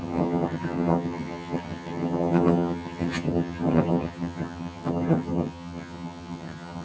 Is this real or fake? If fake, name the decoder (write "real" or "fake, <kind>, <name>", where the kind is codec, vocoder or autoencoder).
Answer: fake, vocoder, HiFi-GAN